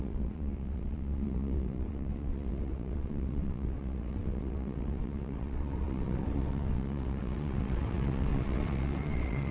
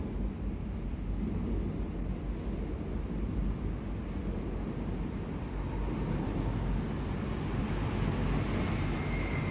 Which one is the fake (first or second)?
first